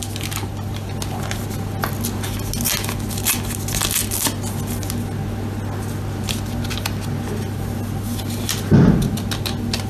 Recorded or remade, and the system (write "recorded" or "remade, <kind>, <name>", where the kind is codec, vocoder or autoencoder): recorded